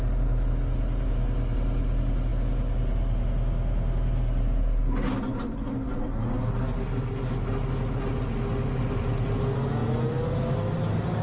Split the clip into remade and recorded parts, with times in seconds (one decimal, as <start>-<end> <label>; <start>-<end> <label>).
0.0-11.2 recorded

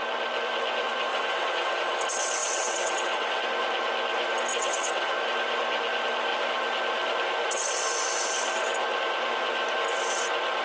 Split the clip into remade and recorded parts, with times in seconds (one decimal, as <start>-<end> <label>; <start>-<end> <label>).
0.0-1.1 recorded; 1.1-2.0 remade; 2.0-2.4 recorded; 2.4-3.4 remade; 3.4-4.5 recorded; 4.5-5.1 remade; 5.1-10.6 recorded